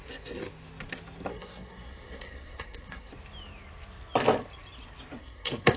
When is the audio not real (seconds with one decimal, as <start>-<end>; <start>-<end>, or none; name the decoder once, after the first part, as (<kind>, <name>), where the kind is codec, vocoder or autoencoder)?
1.3-3.1 (codec, SNAC); 5.2-5.8